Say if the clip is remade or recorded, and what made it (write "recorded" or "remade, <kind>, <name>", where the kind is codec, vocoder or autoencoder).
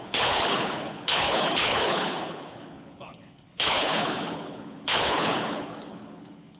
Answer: remade, codec, HILCodec